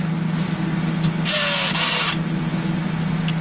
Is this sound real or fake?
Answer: real